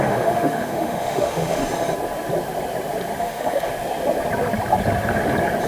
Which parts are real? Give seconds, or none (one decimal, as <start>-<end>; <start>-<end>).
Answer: 1.6-3.2; 3.7-5.7